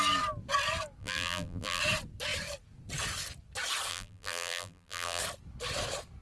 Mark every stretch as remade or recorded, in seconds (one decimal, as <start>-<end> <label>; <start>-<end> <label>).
0.0-1.0 recorded; 1.0-1.8 remade; 1.8-3.9 recorded; 3.9-5.2 remade; 5.2-6.2 recorded